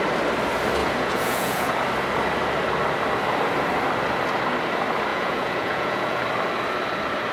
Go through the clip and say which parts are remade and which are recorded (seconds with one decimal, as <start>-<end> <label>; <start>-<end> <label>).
0.0-0.8 recorded; 0.8-1.7 remade; 1.7-5.1 recorded; 5.1-6.2 remade; 6.2-7.3 recorded